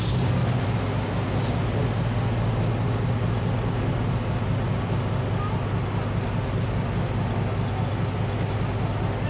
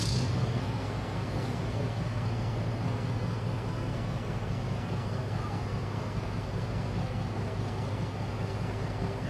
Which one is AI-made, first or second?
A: second